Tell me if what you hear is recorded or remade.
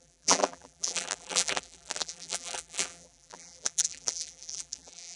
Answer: remade